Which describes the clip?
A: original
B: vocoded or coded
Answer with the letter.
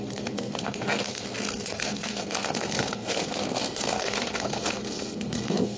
B